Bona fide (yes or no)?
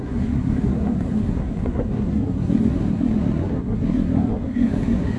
no